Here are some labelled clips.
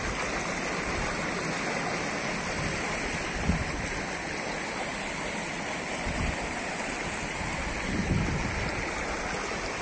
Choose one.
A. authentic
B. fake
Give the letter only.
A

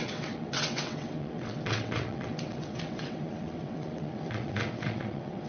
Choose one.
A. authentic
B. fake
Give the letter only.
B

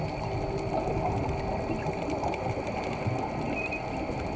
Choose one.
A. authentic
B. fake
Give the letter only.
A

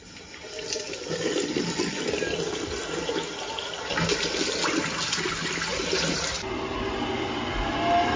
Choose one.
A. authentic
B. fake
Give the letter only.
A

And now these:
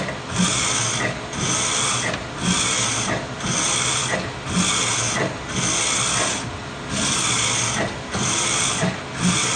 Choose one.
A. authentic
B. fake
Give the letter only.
A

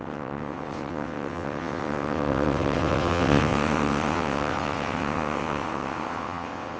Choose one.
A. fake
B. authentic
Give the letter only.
A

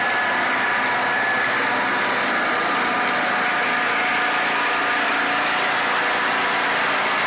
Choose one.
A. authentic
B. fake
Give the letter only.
A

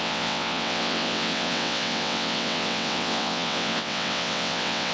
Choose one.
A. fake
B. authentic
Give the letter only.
A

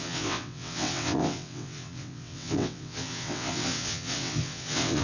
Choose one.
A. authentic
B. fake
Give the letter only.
B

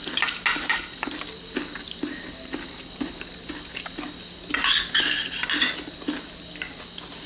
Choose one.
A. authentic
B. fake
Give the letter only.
A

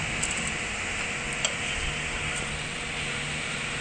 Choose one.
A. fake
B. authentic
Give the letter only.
B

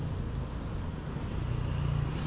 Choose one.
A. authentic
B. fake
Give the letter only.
A